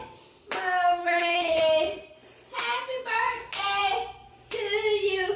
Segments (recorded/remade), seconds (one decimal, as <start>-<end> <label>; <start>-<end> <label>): 0.0-1.0 recorded; 1.0-1.6 remade; 1.6-5.4 recorded